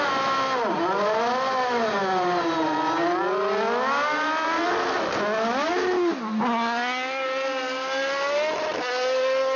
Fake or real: real